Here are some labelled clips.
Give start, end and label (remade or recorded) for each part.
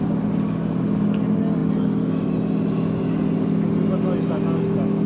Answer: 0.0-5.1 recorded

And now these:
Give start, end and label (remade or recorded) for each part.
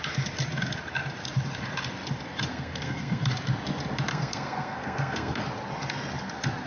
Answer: 0.0-2.5 recorded; 2.5-3.2 remade; 3.2-4.1 recorded; 4.1-5.4 remade; 5.4-6.7 recorded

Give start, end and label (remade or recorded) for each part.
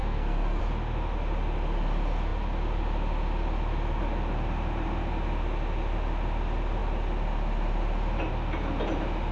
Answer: 0.0-0.6 remade; 0.6-9.3 recorded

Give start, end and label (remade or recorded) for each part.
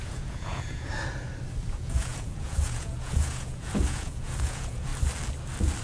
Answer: 0.0-0.9 remade; 0.9-1.7 recorded; 1.7-4.9 remade; 4.9-5.8 recorded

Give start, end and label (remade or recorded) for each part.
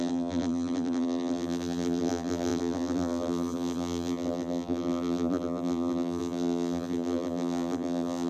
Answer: 0.0-8.3 remade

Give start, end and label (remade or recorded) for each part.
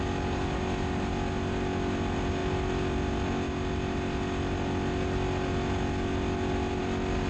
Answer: 0.0-7.3 recorded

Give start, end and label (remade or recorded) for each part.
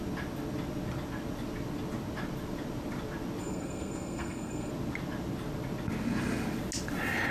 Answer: 0.0-3.4 recorded; 3.4-4.7 remade; 4.7-7.3 recorded